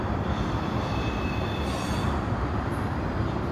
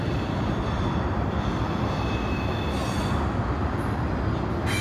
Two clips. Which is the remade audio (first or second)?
first